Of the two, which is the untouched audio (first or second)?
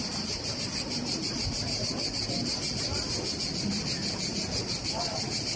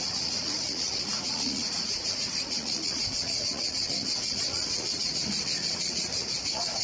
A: first